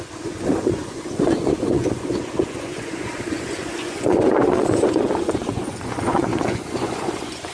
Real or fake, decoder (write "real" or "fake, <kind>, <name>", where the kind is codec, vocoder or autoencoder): fake, vocoder, Vocos